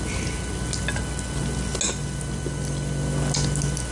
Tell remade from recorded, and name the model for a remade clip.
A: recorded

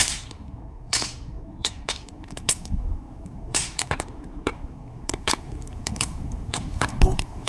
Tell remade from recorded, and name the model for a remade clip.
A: remade, codec, SNAC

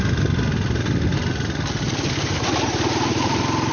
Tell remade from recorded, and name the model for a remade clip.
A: recorded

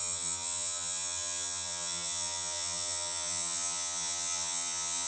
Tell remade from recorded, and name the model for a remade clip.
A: remade, vocoder, HiFi-GAN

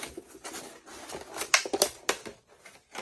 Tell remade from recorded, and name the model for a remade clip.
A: recorded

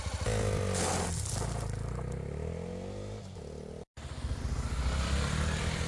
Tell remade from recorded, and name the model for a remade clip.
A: recorded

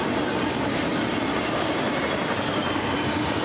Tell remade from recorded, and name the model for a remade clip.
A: recorded